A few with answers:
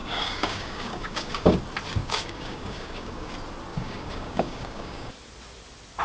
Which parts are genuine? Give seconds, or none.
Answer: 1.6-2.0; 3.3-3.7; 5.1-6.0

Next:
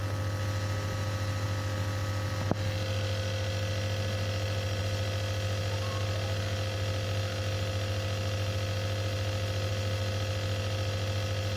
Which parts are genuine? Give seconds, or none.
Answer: 0.0-11.6